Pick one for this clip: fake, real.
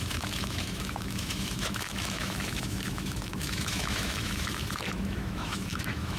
fake